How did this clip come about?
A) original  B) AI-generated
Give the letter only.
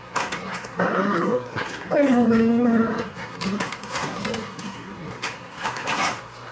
B